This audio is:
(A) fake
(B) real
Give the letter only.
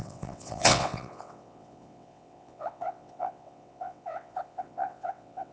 A